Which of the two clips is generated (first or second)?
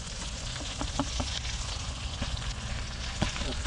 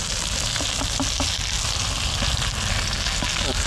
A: first